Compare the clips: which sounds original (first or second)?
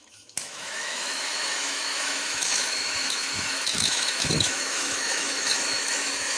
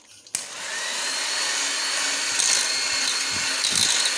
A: second